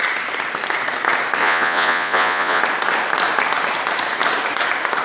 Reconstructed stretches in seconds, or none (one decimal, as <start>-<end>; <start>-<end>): 1.4-2.6